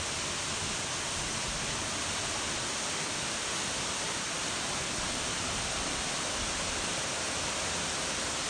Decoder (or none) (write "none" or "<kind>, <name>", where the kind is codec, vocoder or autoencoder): none